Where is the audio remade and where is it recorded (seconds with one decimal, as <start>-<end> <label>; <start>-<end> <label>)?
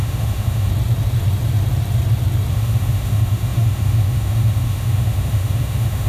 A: 0.0-0.7 remade; 0.7-2.5 recorded; 2.5-6.1 remade